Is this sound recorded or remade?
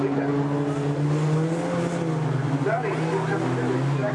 recorded